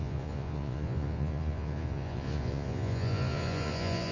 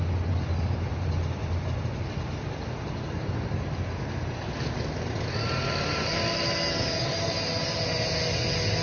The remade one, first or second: first